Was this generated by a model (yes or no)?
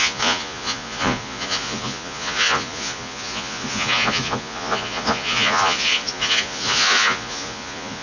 yes